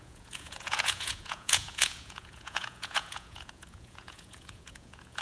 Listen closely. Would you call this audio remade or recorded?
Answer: remade